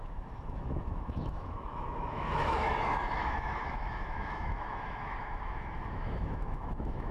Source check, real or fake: fake